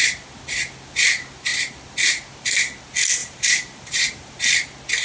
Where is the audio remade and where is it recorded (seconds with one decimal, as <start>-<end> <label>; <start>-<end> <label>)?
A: 0.0-3.2 recorded; 3.2-4.4 remade; 4.4-5.0 recorded